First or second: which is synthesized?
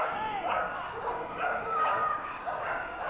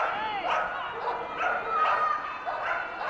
first